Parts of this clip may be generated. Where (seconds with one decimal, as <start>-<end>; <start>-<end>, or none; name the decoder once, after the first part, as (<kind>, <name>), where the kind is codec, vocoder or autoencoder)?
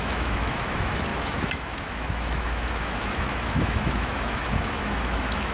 0.0-5.5 (autoencoder, DAC-VAE)